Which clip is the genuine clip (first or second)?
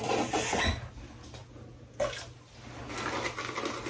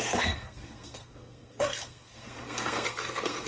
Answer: first